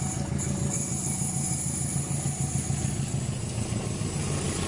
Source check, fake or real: real